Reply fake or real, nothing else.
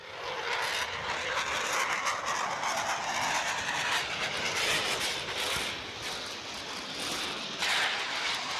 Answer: real